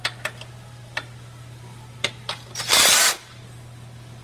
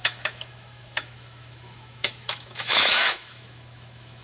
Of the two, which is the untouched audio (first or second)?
first